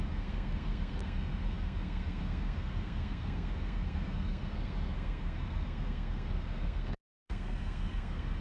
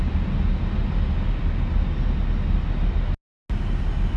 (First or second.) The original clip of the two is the second